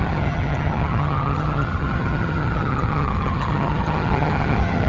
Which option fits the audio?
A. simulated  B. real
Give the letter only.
A